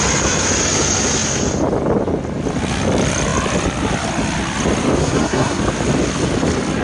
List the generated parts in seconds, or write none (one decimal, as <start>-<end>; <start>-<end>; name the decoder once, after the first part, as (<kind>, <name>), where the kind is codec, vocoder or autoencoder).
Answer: 5.0-5.6 (codec, SNAC)